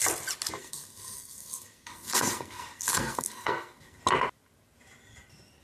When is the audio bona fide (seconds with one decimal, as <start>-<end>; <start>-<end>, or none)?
0.0-0.6; 4.0-5.6